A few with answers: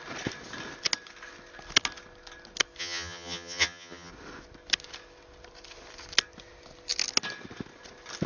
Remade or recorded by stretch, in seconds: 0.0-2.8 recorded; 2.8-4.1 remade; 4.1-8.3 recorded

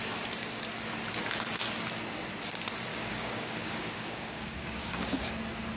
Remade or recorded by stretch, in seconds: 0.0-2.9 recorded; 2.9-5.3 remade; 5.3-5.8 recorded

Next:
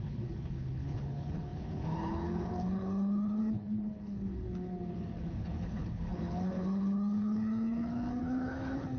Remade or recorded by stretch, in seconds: 0.0-9.0 remade

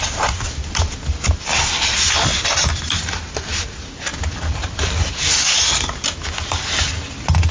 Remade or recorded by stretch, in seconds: 0.0-7.5 recorded

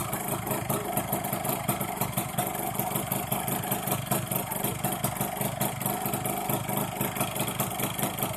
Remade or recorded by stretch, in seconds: 0.0-5.0 remade; 5.0-8.4 recorded